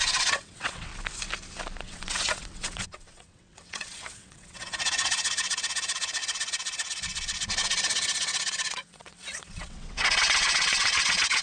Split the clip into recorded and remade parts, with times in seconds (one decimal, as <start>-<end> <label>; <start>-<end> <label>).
0.0-0.9 remade; 0.9-1.8 recorded; 1.8-11.4 remade